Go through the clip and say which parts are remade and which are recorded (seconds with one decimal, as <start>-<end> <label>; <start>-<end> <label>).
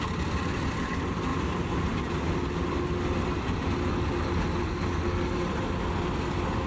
0.0-6.7 recorded